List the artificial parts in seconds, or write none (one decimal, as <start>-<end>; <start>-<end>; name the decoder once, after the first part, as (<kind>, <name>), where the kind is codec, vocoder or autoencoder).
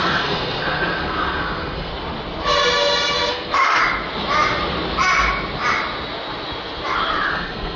0.0-1.9 (codec, SNAC); 3.3-3.8; 7.3-7.8